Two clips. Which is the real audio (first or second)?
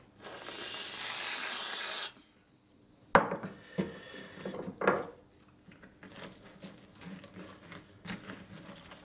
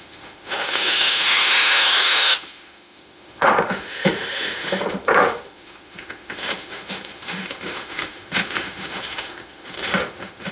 first